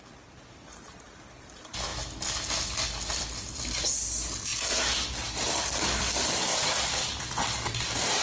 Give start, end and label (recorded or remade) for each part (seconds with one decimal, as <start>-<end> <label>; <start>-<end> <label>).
0.0-8.2 recorded

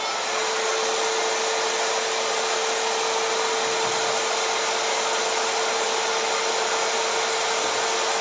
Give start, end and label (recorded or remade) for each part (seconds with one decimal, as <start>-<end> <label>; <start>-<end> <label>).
0.0-8.2 recorded